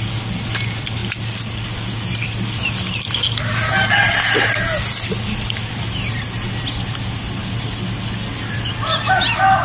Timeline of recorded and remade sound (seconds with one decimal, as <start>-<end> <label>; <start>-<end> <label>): 0.0-9.6 recorded